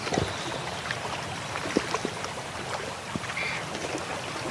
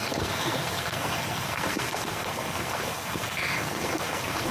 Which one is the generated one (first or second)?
second